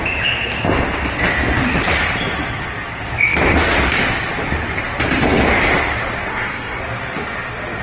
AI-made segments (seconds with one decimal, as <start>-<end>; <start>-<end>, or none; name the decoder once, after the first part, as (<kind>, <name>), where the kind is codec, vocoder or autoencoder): 6.3-6.8 (codec, SNAC)

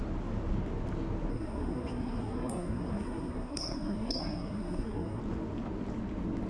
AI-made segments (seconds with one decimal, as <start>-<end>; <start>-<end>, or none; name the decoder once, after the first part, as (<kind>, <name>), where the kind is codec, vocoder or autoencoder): 1.3-5.2 (codec, SNAC)

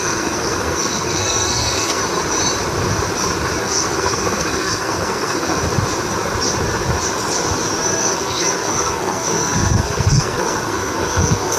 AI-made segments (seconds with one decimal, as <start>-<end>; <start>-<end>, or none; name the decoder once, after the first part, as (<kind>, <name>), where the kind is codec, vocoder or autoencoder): 0.0-2.0 (codec, SNAC); 3.6-5.6; 8.0-11.6

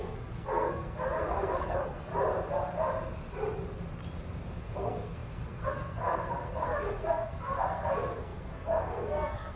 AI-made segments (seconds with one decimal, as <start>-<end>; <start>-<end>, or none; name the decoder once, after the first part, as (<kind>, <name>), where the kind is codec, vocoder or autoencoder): 0.0-2.1 (codec, SNAC); 4.6-9.6